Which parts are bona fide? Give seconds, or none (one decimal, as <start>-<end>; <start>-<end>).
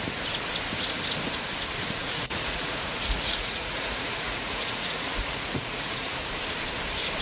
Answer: 0.0-2.0; 6.3-7.2